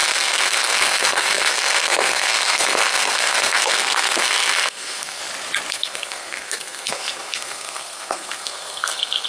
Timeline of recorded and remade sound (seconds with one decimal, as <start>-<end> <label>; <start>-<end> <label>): 0.0-5.2 remade; 5.2-5.7 recorded; 5.7-9.3 remade

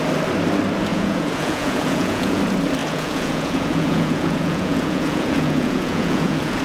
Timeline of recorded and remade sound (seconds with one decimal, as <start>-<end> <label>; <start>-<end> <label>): 0.0-0.9 recorded; 0.9-2.4 remade; 2.4-2.8 recorded; 2.8-6.6 remade

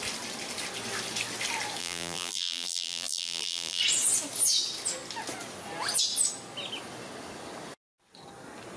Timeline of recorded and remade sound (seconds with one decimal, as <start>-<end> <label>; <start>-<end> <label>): 0.0-1.8 recorded; 1.8-3.8 remade; 3.8-8.8 recorded

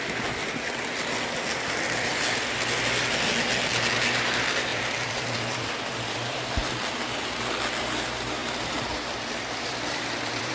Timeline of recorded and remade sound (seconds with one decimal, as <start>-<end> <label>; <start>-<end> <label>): 0.0-4.7 recorded; 4.7-6.7 remade; 6.7-8.4 recorded; 8.4-10.5 remade

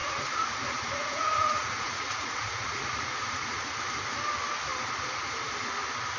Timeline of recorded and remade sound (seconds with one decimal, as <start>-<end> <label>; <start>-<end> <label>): 0.0-3.7 remade; 3.7-6.2 recorded